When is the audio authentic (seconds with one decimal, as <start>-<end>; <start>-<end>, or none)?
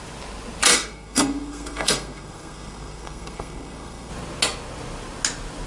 0.0-0.7; 4.1-5.7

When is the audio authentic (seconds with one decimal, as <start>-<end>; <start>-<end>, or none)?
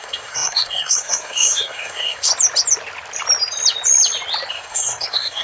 2.3-4.5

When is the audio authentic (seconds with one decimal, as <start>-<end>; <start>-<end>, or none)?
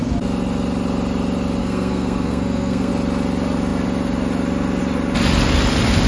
0.0-1.6; 2.9-6.1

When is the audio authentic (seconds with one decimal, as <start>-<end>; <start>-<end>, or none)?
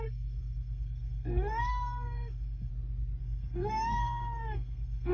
2.7-3.2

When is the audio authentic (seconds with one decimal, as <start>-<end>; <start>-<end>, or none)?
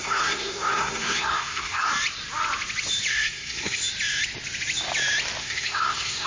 1.9-3.1; 3.8-5.4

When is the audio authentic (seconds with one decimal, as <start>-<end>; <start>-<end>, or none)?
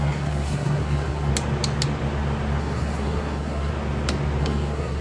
1.3-2.6; 3.7-4.4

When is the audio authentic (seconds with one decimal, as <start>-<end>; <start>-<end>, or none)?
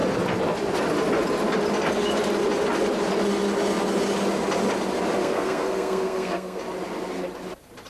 0.0-5.2; 6.6-7.9